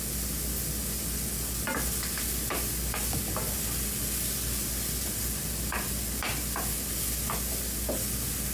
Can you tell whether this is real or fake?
real